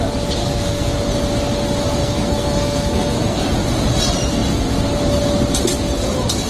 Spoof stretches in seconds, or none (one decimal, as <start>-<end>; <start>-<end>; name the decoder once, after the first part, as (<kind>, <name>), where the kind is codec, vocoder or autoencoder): 0.4-0.9 (codec, SNAC); 2.0-3.4